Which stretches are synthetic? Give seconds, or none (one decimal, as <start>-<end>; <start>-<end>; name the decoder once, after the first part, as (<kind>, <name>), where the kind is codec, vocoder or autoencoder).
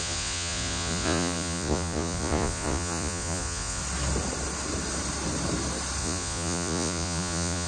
0.0-3.8 (vocoder, Vocos); 6.0-7.7